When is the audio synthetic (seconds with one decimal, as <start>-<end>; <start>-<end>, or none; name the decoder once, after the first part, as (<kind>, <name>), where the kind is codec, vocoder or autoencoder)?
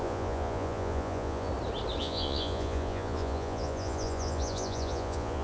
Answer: 0.0-1.5 (vocoder, Vocos); 2.0-5.4